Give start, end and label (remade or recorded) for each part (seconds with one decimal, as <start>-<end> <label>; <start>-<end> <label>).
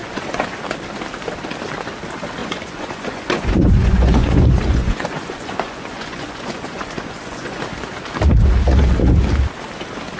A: 0.0-0.6 remade; 0.6-2.4 recorded; 2.4-7.6 remade; 7.6-10.2 recorded